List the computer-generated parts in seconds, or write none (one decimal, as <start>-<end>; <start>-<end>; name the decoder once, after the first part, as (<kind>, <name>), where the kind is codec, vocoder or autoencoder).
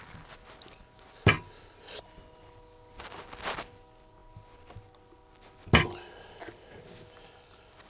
none